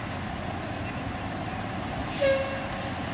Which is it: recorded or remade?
recorded